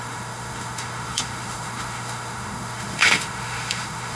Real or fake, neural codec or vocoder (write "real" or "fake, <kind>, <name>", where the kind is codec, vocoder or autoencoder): fake, autoencoder, DAC-VAE